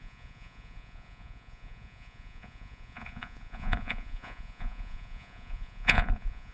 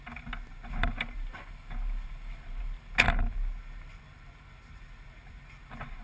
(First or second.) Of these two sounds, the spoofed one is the first